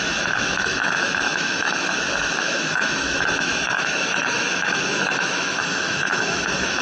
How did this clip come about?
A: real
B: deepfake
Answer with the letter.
B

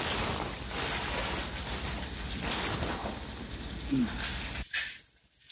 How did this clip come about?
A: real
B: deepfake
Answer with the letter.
A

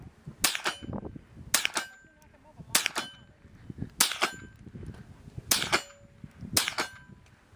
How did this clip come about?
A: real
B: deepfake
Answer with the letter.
A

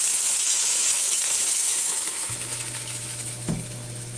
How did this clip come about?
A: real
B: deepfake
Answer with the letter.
B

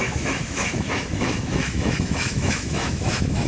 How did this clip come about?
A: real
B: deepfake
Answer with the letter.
B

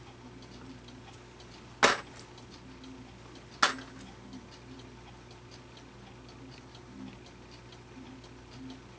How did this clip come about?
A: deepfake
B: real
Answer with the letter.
B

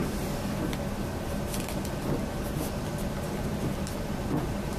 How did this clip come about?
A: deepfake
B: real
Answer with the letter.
B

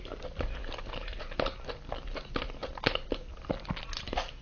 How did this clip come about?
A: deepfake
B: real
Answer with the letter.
B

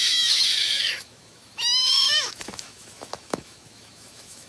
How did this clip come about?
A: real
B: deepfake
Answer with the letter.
B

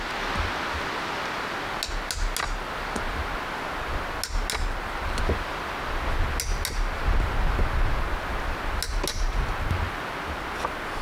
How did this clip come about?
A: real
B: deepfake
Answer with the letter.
A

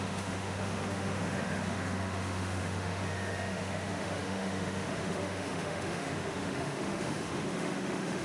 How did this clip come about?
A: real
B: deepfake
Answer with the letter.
B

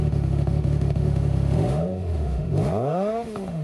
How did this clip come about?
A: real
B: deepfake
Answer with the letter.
B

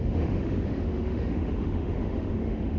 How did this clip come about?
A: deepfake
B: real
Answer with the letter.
A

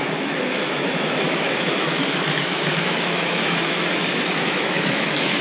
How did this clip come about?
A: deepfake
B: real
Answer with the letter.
A